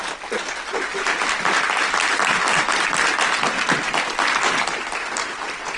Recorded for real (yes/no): yes